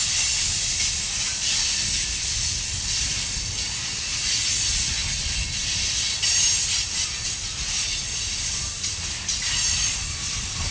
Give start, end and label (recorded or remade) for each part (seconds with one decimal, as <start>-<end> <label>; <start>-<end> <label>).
0.0-10.7 recorded